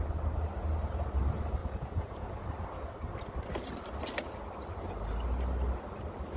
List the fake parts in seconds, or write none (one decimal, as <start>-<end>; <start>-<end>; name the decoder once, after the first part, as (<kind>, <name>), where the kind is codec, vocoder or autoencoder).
1.6-2.3 (vocoder, Vocos)